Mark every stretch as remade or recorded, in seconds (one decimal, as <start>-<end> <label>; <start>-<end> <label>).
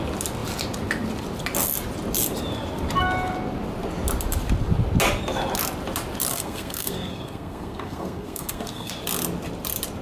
0.0-6.3 recorded; 6.3-8.9 remade; 8.9-10.0 recorded